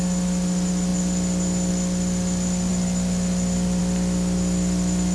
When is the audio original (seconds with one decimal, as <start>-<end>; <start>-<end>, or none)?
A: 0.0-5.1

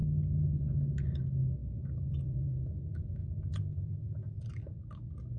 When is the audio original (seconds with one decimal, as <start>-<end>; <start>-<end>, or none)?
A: 0.0-1.6; 4.4-5.4

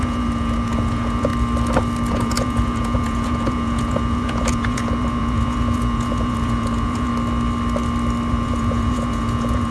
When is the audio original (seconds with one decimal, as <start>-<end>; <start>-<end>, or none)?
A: 1.3-2.1; 7.1-8.3